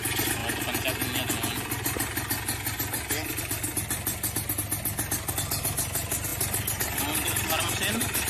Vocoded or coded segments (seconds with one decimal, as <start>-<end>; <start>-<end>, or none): none